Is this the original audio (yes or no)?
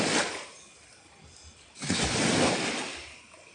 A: yes